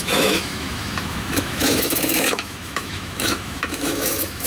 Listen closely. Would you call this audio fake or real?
fake